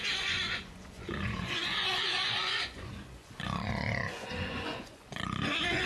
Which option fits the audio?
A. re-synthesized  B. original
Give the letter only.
A